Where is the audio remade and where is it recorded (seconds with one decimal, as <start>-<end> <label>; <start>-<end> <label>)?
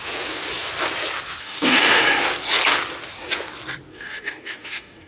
0.0-1.4 recorded; 1.4-2.0 remade; 2.0-3.9 recorded; 3.9-5.1 remade